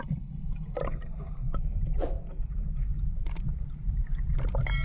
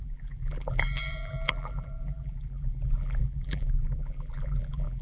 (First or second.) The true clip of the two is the first